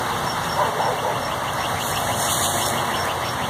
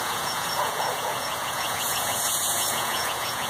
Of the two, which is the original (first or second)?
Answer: first